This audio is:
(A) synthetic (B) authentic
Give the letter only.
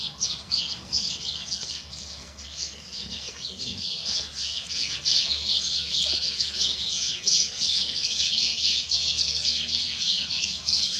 A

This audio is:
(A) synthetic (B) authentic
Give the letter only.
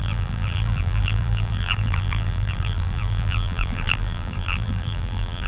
A